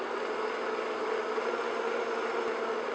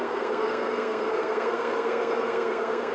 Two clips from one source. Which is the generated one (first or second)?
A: second